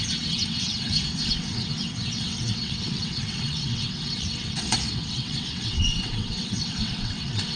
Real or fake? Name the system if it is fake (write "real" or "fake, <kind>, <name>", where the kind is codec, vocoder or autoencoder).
fake, vocoder, WaveNeXt